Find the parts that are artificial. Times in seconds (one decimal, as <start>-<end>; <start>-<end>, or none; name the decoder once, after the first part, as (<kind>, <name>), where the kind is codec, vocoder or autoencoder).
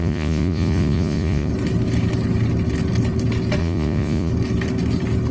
0.0-1.5 (vocoder, Vocos); 3.6-4.3